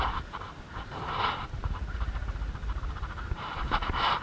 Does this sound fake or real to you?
fake